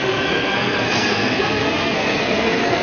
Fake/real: fake